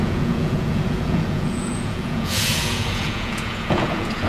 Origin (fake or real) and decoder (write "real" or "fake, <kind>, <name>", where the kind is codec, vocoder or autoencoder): fake, vocoder, Vocos